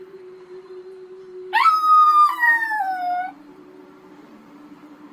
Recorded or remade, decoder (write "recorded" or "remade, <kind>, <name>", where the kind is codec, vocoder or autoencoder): remade, vocoder, BigVGAN v2